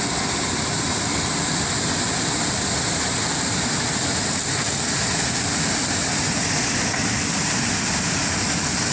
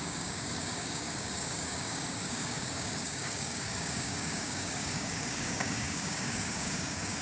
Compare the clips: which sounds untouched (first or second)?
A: first